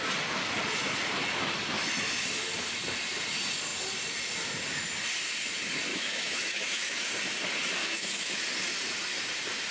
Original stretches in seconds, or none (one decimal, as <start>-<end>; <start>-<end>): 0.0-5.9; 7.1-7.8; 8.4-9.7